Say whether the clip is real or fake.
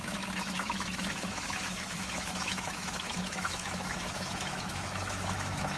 fake